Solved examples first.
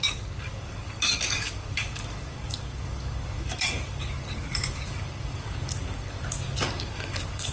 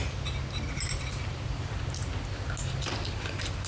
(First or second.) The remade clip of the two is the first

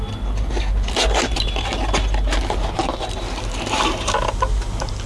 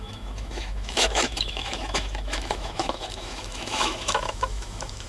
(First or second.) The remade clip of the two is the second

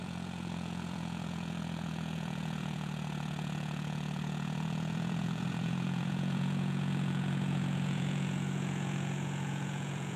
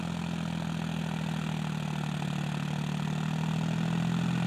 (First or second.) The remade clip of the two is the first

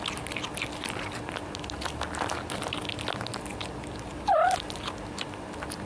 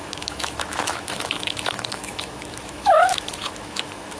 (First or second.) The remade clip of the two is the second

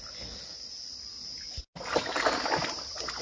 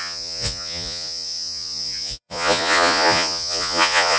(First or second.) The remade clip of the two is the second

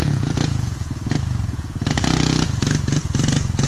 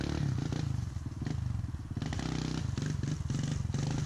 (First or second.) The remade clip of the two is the first